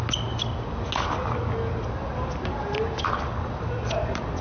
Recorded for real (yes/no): yes